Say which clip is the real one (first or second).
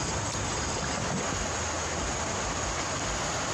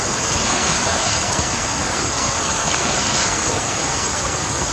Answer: first